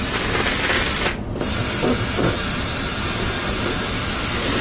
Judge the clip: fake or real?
real